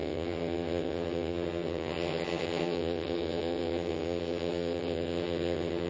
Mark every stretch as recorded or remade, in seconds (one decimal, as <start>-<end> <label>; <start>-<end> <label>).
0.0-5.9 remade